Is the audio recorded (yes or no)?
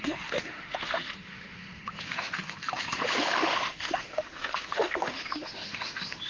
no